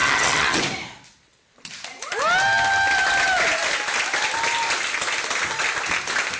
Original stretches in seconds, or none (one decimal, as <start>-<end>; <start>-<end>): 0.6-6.4